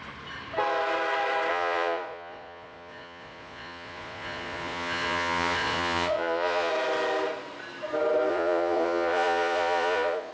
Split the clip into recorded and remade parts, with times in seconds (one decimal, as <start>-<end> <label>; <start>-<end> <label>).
0.0-1.5 recorded; 1.5-6.7 remade; 6.7-8.3 recorded; 8.3-10.3 remade